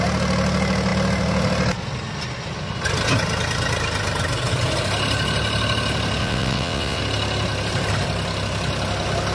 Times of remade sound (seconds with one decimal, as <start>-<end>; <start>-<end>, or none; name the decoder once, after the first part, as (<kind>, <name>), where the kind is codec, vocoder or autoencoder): 6.2-7.0 (vocoder, WaveNeXt)